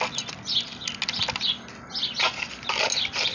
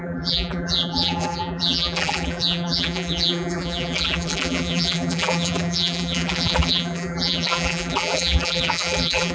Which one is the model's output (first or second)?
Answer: second